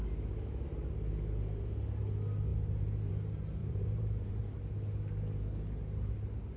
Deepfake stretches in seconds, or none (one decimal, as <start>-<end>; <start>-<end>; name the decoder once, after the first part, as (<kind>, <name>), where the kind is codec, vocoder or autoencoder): 2.5-3.1 (vocoder, BigVGAN v2); 3.6-4.6